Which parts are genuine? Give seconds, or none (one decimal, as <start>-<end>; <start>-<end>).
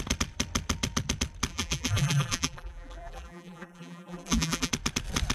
0.0-1.5; 4.7-5.3